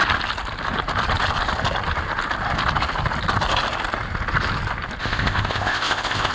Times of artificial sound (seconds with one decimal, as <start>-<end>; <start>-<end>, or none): 5.0-6.3